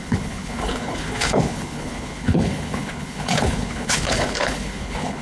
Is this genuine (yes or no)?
no